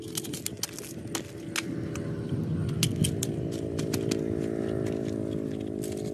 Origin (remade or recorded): recorded